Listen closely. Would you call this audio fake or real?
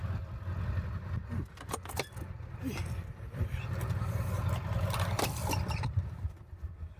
fake